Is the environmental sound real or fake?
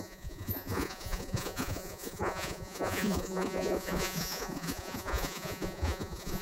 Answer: fake